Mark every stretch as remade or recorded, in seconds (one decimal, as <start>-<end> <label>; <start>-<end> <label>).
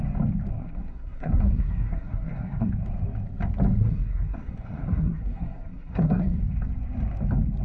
0.0-0.6 recorded; 0.6-2.7 remade; 2.7-3.8 recorded; 3.8-6.4 remade; 6.4-7.6 recorded